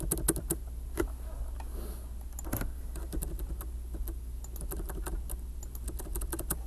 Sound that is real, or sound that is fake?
real